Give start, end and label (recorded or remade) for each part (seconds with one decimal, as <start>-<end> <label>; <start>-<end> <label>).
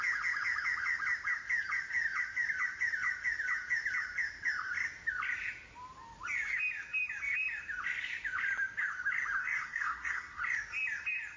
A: 0.0-9.4 recorded; 9.4-10.4 remade; 10.4-11.4 recorded